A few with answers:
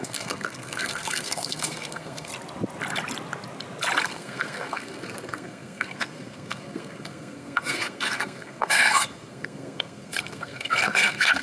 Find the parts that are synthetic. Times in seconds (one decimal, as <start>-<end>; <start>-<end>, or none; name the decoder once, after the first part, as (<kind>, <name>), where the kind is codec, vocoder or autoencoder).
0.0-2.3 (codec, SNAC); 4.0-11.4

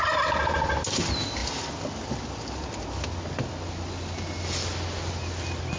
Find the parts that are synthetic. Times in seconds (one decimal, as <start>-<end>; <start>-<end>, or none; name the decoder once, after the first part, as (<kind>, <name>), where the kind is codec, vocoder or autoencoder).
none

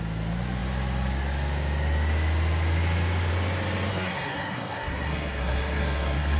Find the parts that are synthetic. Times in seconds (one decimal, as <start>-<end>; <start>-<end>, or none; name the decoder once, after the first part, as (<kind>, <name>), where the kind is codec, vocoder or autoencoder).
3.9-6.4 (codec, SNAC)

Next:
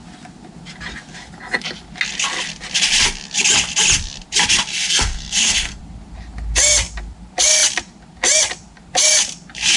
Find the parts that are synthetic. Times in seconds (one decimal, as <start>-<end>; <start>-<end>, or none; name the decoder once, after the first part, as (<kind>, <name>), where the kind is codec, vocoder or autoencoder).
4.7-5.8 (codec, SNAC)

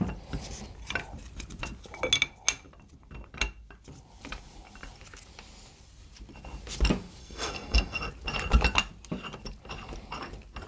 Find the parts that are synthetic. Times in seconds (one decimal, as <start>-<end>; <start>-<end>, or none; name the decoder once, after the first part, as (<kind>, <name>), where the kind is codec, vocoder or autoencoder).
7.2-8.1 (codec, SNAC)

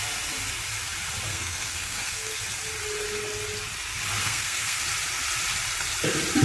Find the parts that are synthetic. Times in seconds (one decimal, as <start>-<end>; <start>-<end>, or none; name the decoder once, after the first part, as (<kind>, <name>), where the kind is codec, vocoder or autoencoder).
1.3-2.4 (codec, SNAC); 4.2-4.8